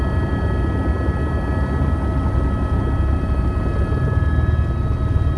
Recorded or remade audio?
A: recorded